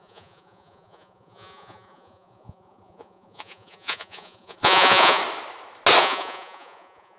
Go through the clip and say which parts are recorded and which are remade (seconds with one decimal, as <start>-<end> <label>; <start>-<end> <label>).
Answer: 0.0-5.2 remade; 5.2-6.0 recorded; 6.0-7.2 remade